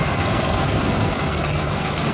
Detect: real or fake fake